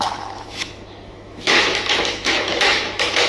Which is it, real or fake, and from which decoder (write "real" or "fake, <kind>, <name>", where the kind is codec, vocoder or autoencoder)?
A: fake, autoencoder, DAC-VAE